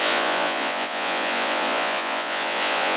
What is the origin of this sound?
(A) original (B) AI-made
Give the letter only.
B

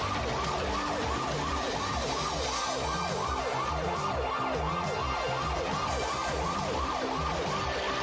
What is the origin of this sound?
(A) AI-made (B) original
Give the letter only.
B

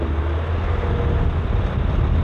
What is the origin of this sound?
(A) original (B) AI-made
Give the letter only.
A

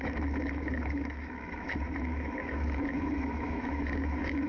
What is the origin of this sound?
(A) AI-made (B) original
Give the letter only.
A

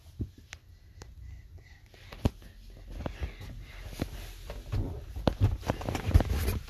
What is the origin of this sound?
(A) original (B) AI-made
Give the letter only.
A